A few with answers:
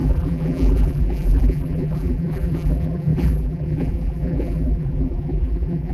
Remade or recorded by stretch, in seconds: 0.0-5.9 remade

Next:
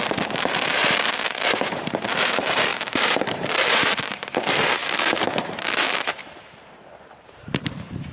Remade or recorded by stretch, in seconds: 0.0-8.1 remade

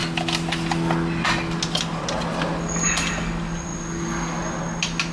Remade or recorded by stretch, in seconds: 0.0-5.1 recorded

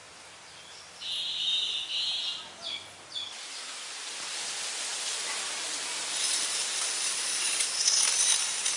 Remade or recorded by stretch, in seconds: 0.0-8.8 recorded

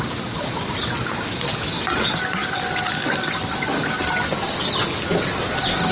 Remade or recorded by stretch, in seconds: 0.0-5.9 recorded